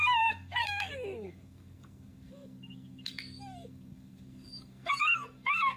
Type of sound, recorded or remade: remade